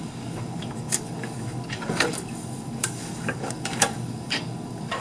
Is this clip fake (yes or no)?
yes